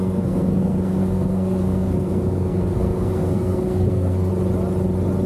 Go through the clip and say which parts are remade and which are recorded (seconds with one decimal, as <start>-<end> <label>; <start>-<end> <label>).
0.0-4.3 remade; 4.3-5.3 recorded